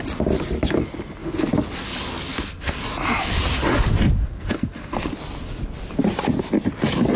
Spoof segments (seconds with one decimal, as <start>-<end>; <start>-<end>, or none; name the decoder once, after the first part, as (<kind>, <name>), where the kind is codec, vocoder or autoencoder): 2.3-2.8 (codec, SNAC); 4.2-5.0